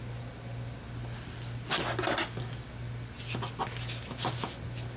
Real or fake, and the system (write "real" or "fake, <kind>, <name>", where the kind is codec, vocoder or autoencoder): real